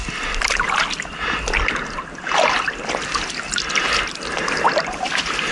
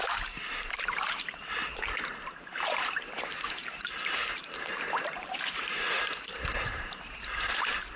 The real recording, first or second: first